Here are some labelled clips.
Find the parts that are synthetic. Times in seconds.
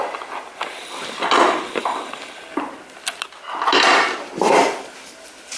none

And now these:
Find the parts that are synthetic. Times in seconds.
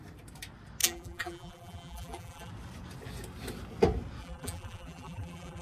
0.8-2.5 (vocoder, BigVGAN v2); 4.2-5.6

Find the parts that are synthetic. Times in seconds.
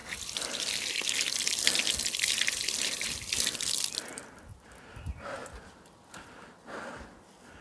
0.0-4.5 (vocoder, BigVGAN v2); 5.4-6.1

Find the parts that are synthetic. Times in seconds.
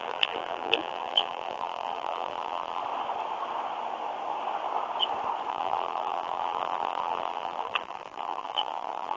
0.0-2.8 (vocoder, BigVGAN v2); 5.5-9.2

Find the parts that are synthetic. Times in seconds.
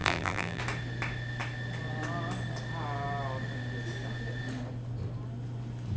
0.0-0.6 (vocoder, BigVGAN v2)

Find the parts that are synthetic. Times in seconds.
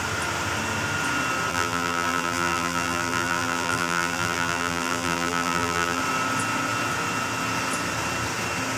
1.5-6.0 (vocoder, BigVGAN v2)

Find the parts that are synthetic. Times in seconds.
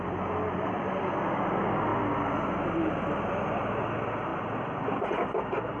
none